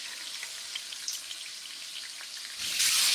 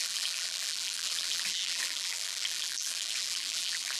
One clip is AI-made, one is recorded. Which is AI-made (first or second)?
second